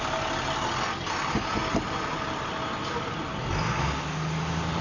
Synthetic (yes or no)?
no